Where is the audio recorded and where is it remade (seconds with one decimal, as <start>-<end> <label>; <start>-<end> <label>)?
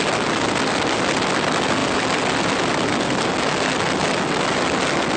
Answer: 0.0-5.2 recorded